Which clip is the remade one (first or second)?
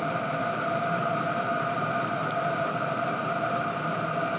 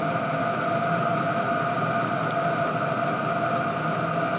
first